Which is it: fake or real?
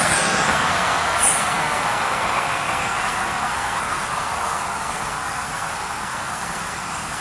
fake